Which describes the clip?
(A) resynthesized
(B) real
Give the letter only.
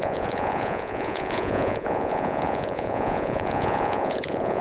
A